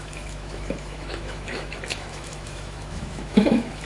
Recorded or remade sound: remade